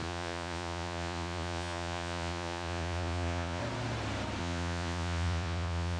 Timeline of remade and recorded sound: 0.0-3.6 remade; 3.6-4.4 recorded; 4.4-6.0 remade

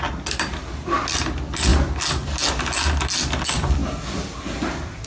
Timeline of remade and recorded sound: 0.0-5.1 recorded

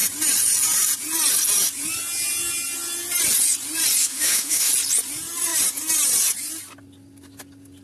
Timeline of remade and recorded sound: 0.0-4.0 recorded; 4.0-4.7 remade; 4.7-7.8 recorded

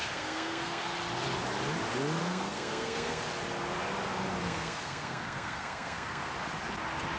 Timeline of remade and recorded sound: 0.0-0.8 remade; 0.8-2.2 recorded; 2.2-3.2 remade; 3.2-4.4 recorded; 4.4-6.3 remade; 6.3-7.2 recorded